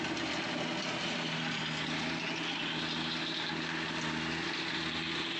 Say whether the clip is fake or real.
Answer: real